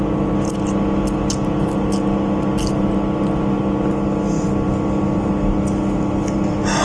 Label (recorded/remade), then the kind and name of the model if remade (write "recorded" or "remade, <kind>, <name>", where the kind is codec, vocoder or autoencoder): recorded